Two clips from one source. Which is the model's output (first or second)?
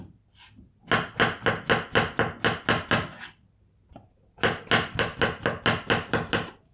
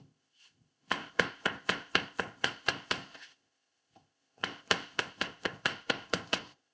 second